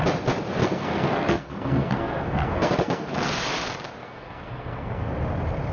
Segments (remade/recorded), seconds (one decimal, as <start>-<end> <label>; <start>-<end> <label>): 0.0-0.6 recorded; 0.6-3.3 remade; 3.3-4.0 recorded; 4.0-5.1 remade; 5.1-5.7 recorded